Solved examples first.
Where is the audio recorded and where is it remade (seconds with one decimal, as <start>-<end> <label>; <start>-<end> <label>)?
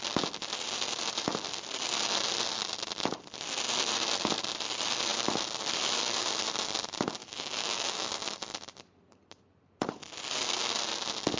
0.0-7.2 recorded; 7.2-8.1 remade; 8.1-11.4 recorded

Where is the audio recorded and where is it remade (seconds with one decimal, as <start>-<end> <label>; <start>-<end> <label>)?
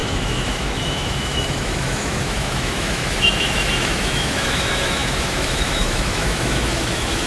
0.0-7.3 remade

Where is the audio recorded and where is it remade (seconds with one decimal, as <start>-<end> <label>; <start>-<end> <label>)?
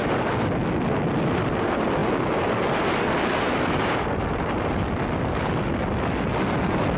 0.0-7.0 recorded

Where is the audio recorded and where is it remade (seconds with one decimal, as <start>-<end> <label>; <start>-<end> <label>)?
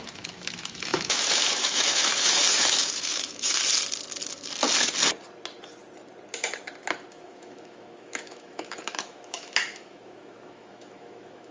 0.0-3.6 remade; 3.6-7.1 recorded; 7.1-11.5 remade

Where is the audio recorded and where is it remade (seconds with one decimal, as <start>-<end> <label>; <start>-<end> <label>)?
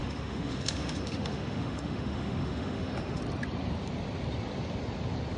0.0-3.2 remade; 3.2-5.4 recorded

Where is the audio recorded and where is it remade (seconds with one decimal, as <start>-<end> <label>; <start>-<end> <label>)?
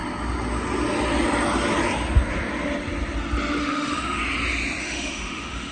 0.0-3.6 recorded; 3.6-4.2 remade; 4.2-4.8 recorded; 4.8-5.7 remade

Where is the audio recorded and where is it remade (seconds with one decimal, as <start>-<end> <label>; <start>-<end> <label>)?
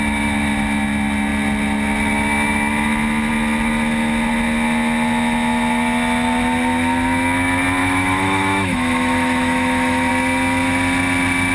0.0-7.8 recorded; 7.8-10.1 remade; 10.1-11.5 recorded